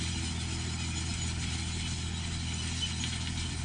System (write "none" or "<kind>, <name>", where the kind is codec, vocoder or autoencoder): none